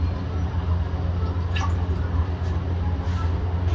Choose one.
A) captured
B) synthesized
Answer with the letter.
A